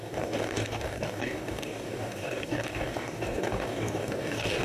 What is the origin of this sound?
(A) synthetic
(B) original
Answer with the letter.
A